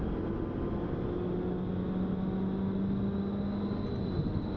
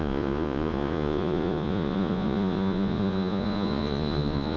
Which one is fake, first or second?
second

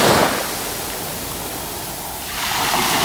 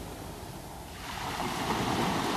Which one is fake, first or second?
second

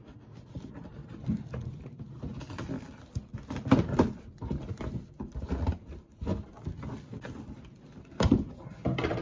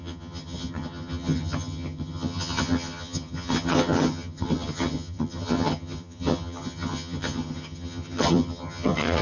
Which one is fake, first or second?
second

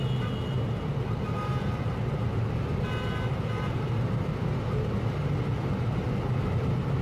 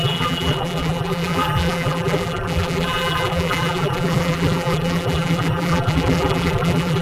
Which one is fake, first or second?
second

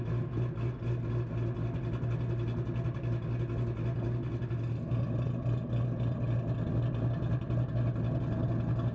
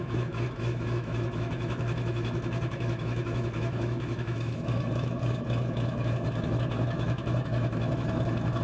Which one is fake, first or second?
second